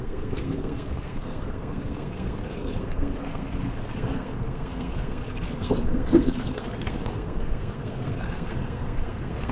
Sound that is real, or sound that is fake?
fake